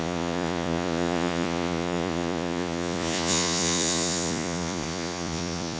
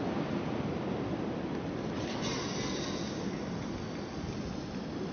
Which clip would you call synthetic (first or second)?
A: first